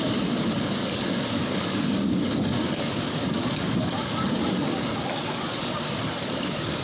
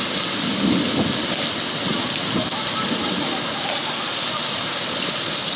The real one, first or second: second